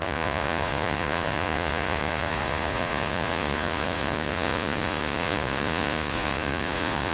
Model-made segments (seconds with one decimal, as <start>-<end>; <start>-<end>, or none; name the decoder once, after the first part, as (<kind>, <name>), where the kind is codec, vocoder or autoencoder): 0.0-7.1 (vocoder, Vocos)